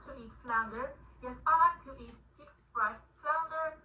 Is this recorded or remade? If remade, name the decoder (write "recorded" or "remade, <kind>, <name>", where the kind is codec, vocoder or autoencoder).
recorded